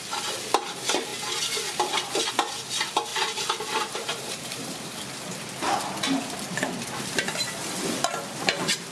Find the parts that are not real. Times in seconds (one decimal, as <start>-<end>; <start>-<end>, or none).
3.1-5.3